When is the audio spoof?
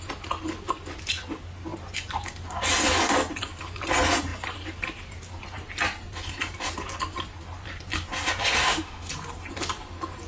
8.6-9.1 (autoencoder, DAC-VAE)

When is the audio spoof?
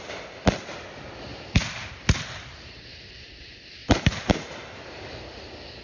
1.3-1.9 (vocoder, BigVGAN v2); 3.8-5.2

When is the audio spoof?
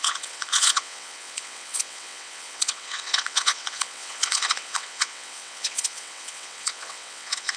0.0-7.6 (vocoder, WaveNeXt)